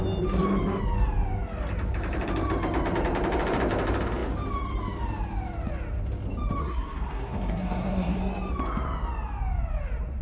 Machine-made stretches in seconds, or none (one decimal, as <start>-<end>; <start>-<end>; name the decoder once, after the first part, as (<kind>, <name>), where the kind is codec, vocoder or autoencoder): 6.6-8.2 (codec, SNAC)